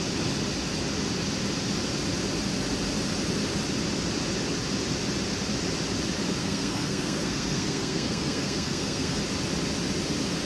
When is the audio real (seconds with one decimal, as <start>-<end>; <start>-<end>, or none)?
0.0-6.4; 9.2-10.5